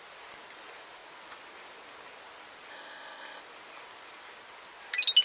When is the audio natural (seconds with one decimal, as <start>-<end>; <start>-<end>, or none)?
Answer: 0.0-2.7; 3.4-5.2